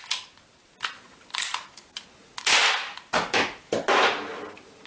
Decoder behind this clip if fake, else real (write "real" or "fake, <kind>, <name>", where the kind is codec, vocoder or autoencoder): real